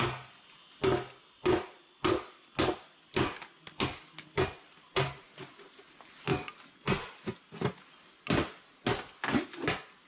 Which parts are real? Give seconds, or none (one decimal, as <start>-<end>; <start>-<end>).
0.0-10.1